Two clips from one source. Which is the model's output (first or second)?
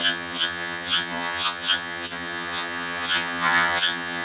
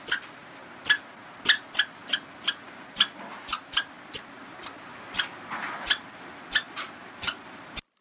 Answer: first